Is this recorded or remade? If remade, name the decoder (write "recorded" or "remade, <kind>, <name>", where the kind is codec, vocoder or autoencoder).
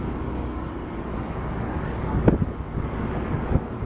remade, codec, DAC